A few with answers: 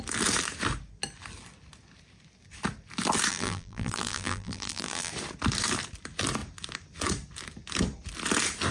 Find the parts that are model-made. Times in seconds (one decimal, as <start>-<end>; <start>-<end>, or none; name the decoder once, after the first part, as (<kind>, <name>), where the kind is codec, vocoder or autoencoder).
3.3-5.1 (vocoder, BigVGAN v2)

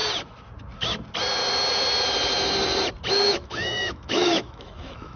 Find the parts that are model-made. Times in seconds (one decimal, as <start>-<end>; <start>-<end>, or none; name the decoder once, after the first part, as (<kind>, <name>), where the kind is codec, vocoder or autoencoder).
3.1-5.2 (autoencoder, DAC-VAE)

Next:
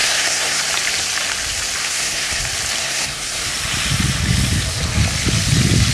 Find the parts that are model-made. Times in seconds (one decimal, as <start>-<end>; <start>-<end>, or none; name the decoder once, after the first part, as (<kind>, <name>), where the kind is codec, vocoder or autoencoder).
0.0-0.6 (codec, SNAC); 1.8-2.4; 2.8-3.5

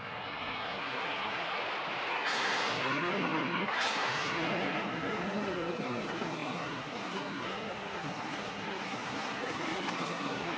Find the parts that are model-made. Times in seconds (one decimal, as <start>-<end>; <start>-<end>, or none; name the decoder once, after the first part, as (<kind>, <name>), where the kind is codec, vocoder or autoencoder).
0.0-1.6 (codec, SNAC); 2.1-10.6